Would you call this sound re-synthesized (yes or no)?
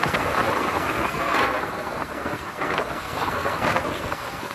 yes